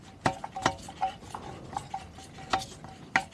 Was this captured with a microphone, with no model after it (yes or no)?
yes